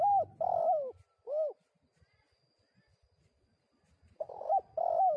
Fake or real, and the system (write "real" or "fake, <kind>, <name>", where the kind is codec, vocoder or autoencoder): real